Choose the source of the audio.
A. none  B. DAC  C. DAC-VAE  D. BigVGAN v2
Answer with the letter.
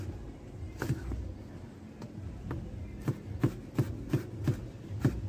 A